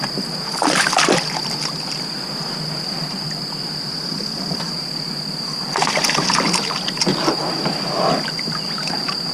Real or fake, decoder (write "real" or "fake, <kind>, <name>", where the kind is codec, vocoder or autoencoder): real